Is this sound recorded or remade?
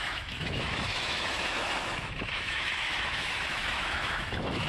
remade